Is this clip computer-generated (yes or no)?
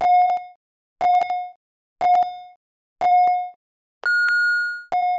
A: no